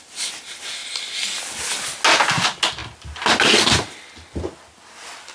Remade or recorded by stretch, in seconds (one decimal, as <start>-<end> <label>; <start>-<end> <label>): 0.0-5.3 recorded